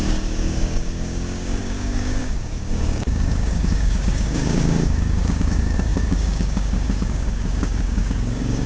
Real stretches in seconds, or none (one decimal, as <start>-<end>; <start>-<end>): none